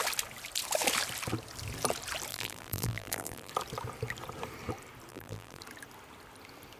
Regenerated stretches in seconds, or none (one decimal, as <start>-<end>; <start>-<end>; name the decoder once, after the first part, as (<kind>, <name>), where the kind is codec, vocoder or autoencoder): 2.3-3.5 (vocoder, BigVGAN v2); 5.1-5.6